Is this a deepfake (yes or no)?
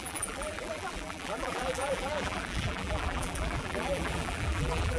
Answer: yes